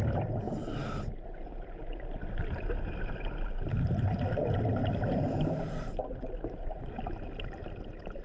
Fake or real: real